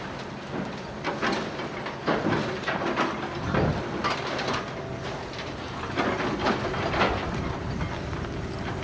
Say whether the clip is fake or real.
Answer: real